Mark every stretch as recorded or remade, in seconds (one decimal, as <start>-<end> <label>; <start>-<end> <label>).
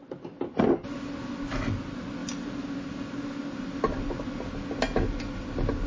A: 0.0-5.9 recorded